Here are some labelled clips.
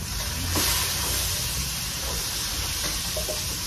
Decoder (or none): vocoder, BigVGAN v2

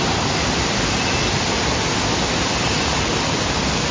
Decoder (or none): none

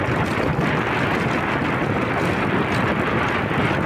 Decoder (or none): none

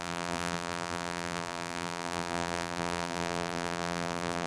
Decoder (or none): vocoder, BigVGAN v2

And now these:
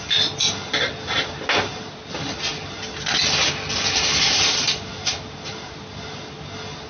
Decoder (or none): none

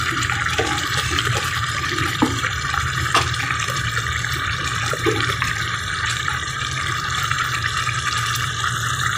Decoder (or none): vocoder, BigVGAN v2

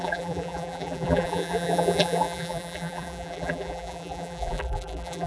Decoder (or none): vocoder, BigVGAN v2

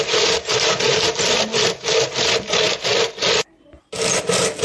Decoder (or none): none